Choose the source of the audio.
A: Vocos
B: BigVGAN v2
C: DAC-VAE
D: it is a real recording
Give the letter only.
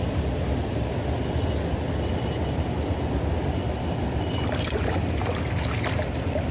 D